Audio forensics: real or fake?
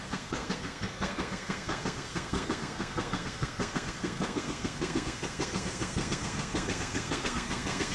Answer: fake